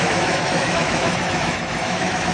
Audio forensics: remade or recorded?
remade